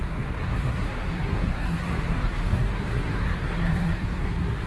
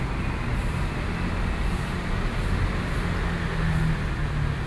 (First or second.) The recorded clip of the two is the second